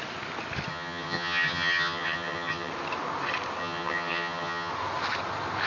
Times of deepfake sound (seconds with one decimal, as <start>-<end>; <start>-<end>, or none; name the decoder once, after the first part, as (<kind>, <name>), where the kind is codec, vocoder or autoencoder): 0.7-2.7 (vocoder, HiFi-GAN); 3.6-4.7